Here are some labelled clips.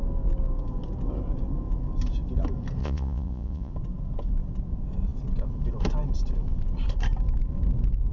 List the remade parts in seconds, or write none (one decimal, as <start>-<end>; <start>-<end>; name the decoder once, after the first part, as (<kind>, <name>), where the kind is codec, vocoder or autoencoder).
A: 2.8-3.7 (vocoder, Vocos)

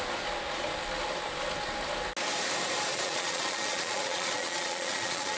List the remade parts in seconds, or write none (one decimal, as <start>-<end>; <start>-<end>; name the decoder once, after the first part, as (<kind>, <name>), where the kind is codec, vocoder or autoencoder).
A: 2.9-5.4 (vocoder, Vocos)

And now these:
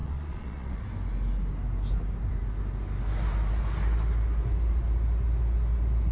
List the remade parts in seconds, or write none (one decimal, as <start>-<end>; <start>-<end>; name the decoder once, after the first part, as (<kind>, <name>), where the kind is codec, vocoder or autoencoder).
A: 0.0-0.8 (vocoder, Vocos)

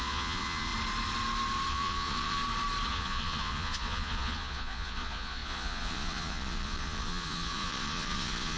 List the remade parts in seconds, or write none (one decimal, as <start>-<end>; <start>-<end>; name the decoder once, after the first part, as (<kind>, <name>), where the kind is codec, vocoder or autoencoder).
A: 0.0-0.7 (vocoder, Vocos); 1.7-2.4; 2.9-8.6

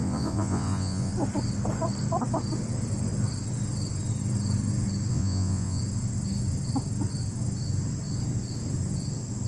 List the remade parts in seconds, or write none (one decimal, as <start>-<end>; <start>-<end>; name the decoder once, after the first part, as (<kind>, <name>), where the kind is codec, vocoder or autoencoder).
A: 0.0-1.1 (vocoder, Vocos); 5.1-5.8

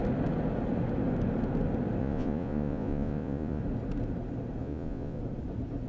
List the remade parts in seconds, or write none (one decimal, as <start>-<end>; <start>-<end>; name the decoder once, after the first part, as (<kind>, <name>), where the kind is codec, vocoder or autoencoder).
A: 2.0-3.6 (vocoder, Vocos); 4.6-5.2

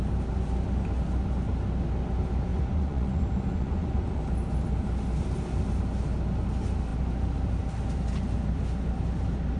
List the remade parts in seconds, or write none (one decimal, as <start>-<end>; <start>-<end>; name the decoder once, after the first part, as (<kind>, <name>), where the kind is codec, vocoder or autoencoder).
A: 2.5-4.2 (vocoder, Vocos)